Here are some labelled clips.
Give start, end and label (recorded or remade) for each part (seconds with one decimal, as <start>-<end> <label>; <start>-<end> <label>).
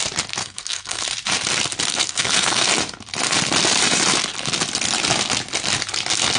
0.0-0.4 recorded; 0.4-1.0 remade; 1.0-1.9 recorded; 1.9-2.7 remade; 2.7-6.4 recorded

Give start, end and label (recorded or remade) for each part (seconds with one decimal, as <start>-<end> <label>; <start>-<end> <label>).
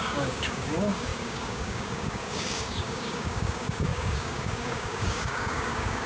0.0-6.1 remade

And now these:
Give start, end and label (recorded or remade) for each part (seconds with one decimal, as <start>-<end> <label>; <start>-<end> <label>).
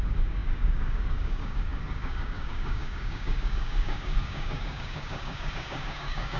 0.0-6.4 remade